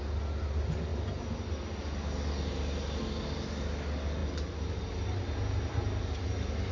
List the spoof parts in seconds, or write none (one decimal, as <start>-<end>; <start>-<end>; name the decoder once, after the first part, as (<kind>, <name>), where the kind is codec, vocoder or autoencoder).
none